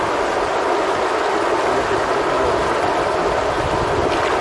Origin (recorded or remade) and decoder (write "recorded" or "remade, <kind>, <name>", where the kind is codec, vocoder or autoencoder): recorded